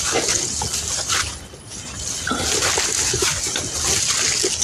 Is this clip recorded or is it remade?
recorded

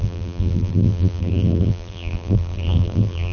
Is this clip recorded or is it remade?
remade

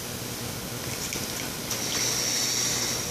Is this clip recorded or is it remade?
recorded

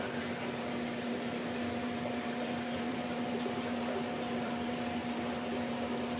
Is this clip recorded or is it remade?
remade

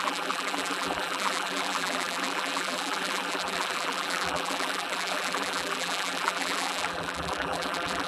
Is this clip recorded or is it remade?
remade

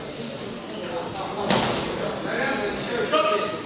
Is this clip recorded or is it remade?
recorded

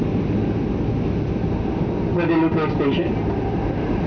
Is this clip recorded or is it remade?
recorded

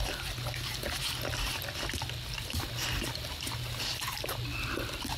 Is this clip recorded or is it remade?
recorded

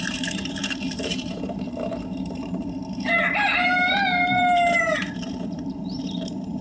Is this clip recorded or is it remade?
remade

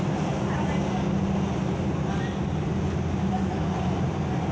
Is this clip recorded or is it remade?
recorded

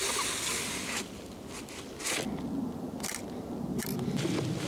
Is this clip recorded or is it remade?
recorded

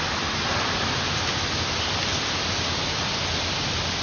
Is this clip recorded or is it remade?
remade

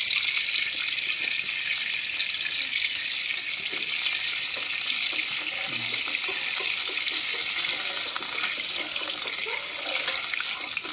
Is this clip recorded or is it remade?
recorded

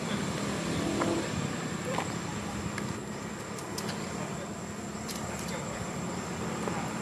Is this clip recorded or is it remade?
recorded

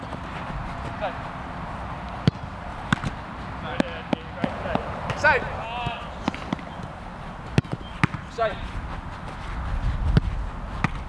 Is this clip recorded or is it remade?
recorded